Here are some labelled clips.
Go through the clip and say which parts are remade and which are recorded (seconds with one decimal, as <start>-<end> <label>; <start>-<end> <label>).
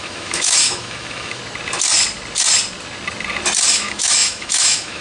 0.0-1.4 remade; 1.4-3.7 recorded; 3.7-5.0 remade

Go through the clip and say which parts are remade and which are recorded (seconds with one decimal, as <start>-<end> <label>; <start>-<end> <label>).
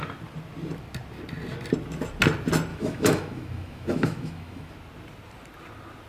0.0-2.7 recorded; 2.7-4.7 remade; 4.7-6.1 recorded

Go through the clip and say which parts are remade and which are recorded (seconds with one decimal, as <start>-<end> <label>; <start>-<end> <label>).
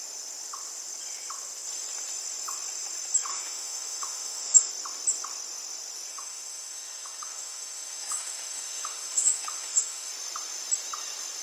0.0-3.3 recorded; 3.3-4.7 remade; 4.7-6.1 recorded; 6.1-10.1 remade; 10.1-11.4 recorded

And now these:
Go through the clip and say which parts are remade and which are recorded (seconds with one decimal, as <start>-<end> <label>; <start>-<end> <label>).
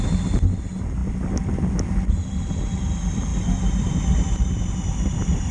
0.0-5.5 recorded